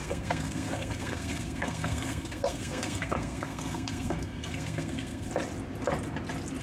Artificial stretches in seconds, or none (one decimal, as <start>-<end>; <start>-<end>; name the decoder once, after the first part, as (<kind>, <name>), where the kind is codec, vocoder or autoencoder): 0.0-5.3 (codec, SNAC)

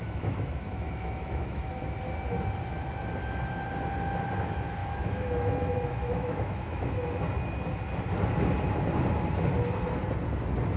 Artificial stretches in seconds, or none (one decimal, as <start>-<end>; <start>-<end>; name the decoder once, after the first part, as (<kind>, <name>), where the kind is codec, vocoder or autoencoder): 0.0-1.7 (autoencoder, DAC-VAE); 4.8-7.2

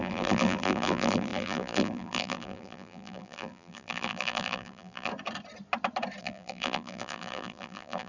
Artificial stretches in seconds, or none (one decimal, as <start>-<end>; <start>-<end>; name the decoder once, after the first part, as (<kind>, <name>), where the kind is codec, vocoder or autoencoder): 0.0-5.1 (vocoder, BigVGAN v2); 6.2-8.1

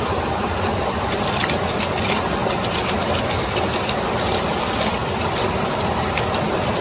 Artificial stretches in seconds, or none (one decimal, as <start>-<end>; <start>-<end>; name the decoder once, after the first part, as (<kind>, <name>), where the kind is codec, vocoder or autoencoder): 5.0-5.9 (vocoder, BigVGAN v2)

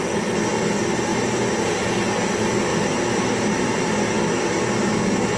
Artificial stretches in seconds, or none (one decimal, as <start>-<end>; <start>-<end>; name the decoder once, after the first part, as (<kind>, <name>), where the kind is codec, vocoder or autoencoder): 2.7-4.0 (vocoder, BigVGAN v2)

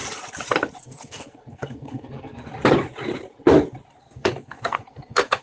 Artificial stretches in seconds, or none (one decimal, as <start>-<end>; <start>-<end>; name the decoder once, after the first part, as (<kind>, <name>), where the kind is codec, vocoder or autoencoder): 0.8-2.5 (codec, SNAC); 4.0-5.4

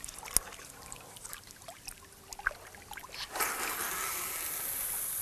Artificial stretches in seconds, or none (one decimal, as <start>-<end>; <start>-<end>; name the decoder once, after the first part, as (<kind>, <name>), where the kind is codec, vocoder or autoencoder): none